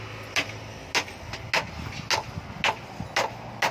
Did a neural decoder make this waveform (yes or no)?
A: no